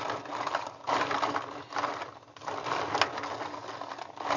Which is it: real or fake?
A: real